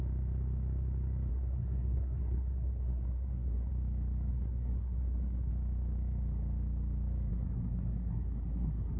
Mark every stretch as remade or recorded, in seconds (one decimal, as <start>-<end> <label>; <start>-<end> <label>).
0.0-1.3 recorded; 1.3-3.7 remade; 3.7-4.3 recorded; 4.3-5.5 remade; 5.5-7.3 recorded; 7.3-9.0 remade

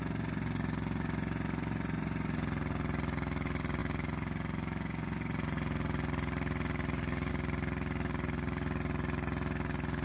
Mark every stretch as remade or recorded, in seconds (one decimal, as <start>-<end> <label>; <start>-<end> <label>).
0.0-10.0 recorded

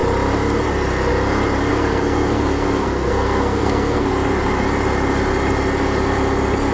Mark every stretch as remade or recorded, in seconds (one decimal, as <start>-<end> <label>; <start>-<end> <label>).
0.0-1.7 recorded; 1.7-4.1 remade; 4.1-6.7 recorded

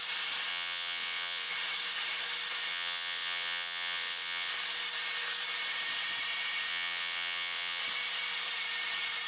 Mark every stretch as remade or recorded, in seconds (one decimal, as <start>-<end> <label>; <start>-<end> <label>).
0.0-0.5 recorded; 0.5-1.5 remade; 1.5-2.7 recorded; 2.7-4.5 remade; 4.5-6.7 recorded; 6.7-7.8 remade; 7.8-9.3 recorded

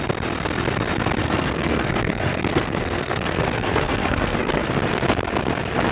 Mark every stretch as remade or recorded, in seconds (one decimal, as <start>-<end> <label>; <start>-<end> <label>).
0.0-1.2 recorded; 1.2-4.7 remade; 4.7-5.9 recorded

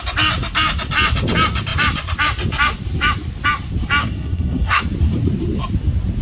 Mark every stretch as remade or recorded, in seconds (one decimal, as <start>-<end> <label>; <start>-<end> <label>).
0.0-4.0 recorded; 4.0-4.8 remade; 4.8-6.2 recorded

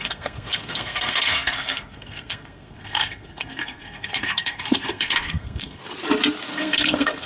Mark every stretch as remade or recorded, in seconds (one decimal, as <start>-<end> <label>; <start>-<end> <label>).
0.0-5.8 remade; 5.8-6.5 recorded; 6.5-7.3 remade